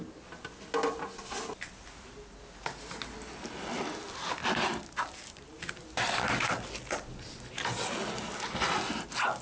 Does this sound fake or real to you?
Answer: real